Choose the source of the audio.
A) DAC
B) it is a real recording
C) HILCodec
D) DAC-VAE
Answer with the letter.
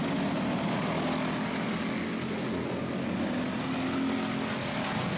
B